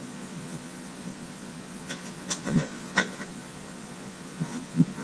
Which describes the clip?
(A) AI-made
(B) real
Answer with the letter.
A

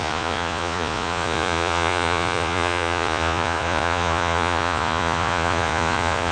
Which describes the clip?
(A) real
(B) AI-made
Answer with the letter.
B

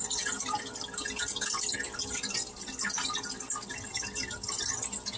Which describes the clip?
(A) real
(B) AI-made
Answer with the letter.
A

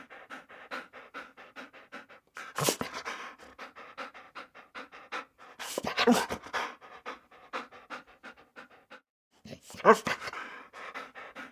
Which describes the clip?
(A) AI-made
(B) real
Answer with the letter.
B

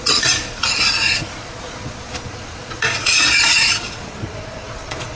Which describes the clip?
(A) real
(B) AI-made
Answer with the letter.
B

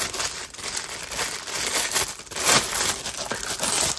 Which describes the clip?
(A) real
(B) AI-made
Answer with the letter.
A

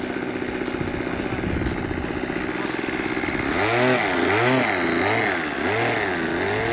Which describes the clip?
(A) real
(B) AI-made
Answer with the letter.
A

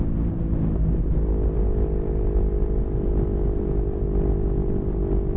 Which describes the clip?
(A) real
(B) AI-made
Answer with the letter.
A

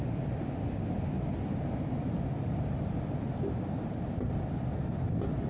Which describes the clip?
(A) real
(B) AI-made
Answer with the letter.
A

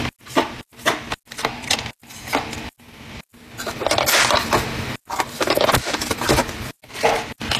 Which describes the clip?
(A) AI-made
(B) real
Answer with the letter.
B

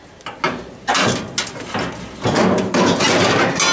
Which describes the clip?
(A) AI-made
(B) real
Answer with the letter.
B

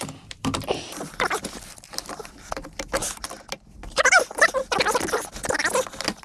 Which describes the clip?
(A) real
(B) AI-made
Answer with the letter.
A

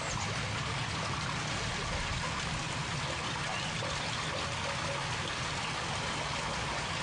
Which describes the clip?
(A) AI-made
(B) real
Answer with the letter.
B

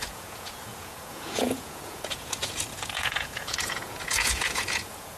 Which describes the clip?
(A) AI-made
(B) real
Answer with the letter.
A